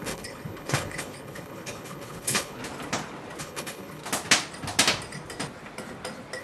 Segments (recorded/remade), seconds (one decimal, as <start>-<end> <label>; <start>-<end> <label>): 0.0-2.6 remade; 2.6-3.4 recorded; 3.4-4.0 remade; 4.0-6.4 recorded